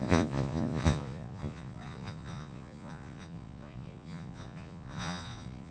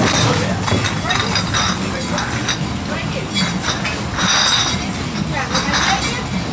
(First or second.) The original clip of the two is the second